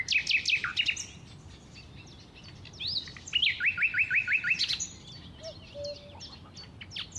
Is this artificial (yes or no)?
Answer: no